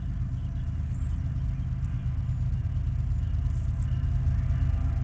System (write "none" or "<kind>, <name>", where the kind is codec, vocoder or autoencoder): none